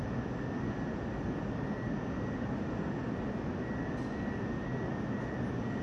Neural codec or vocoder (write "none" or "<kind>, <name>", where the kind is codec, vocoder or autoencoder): none